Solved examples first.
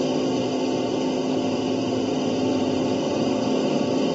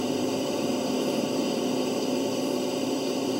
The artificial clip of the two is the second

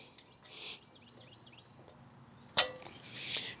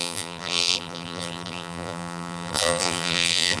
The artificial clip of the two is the second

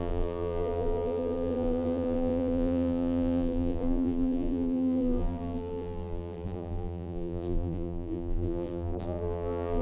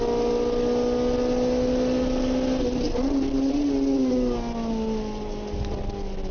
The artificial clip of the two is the first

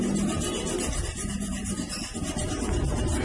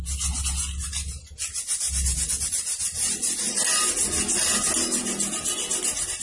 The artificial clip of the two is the first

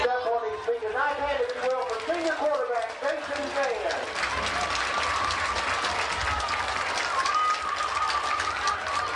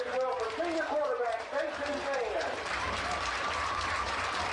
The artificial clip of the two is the second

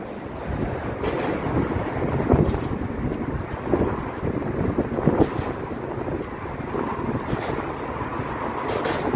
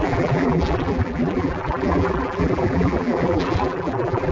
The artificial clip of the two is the second